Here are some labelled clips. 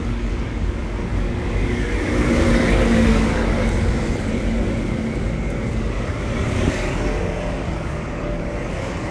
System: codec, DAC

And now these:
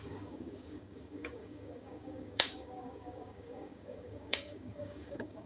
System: codec, DAC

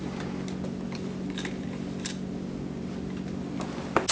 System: none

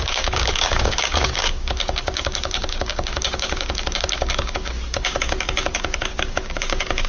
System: codec, DAC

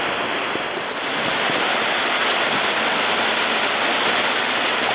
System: none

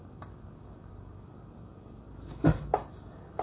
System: codec, DAC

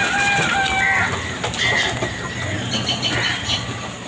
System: none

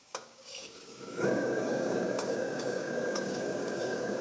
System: codec, DAC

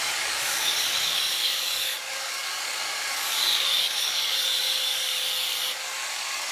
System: codec, DAC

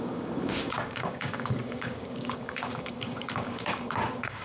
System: codec, DAC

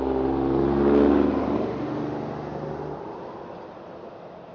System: none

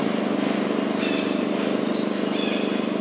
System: none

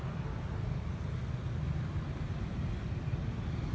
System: none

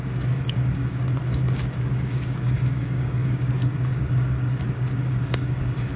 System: codec, DAC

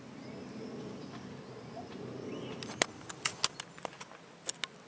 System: none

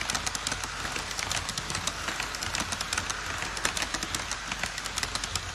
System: none